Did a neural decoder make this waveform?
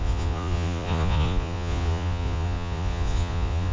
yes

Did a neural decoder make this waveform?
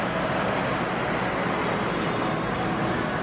no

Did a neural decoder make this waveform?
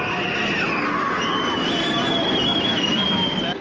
no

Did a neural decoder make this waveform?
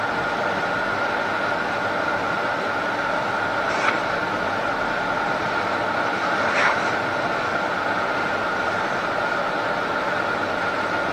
no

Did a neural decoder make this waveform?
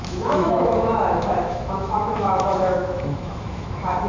yes